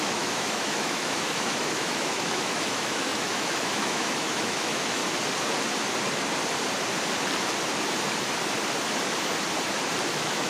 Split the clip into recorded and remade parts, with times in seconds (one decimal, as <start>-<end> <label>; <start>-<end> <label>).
0.0-5.0 remade; 5.0-10.1 recorded; 10.1-10.5 remade